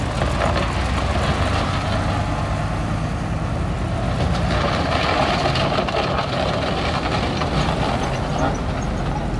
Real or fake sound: real